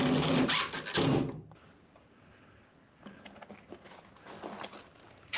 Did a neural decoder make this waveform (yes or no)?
no